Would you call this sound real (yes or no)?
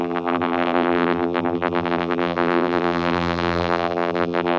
no